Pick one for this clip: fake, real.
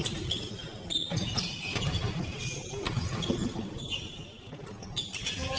real